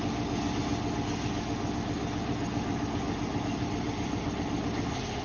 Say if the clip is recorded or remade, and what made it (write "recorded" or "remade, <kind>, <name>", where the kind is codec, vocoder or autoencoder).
recorded